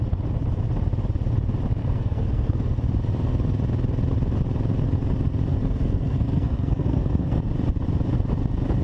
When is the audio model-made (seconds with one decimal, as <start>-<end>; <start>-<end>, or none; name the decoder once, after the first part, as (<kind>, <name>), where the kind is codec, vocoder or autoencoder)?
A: 1.8-2.7 (codec, SNAC); 5.5-7.4